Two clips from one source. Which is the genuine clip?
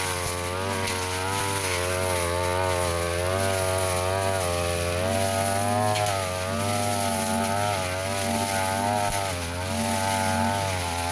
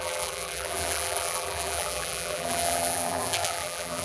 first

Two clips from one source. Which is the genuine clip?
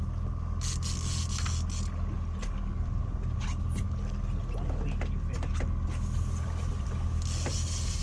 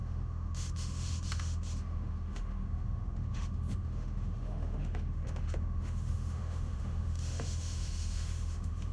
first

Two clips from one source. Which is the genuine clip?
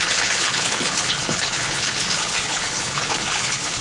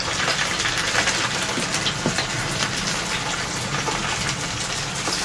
second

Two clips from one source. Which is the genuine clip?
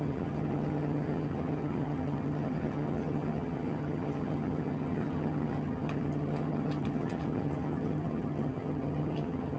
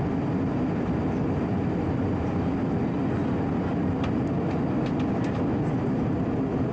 second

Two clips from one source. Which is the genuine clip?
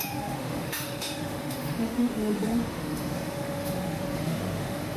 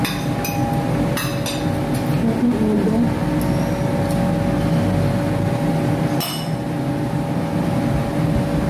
second